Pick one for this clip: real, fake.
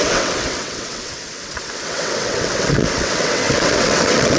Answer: fake